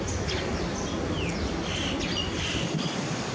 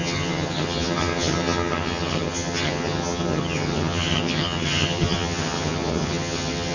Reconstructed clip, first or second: second